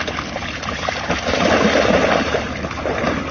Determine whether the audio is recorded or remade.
recorded